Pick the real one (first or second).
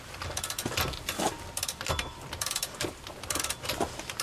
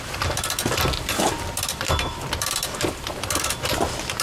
first